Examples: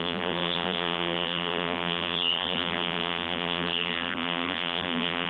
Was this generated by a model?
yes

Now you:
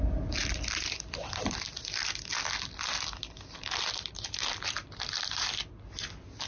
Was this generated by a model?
no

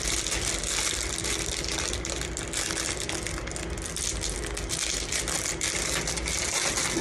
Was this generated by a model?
no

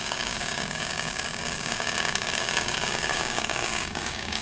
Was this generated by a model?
yes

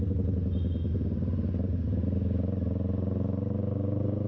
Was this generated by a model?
no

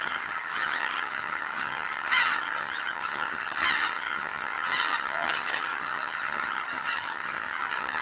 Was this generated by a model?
yes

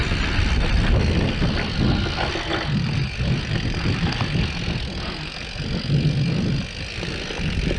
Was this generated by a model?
no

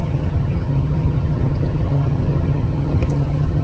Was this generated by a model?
yes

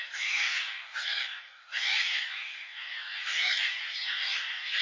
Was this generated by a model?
yes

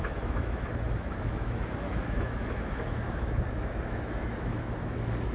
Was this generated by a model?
yes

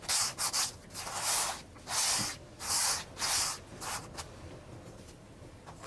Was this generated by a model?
no